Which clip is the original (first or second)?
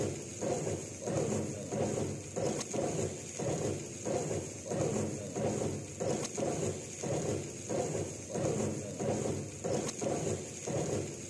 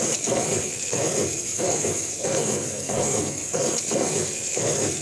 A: first